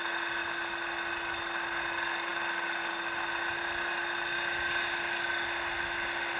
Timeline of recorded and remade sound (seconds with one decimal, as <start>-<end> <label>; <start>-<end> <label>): 0.0-6.4 recorded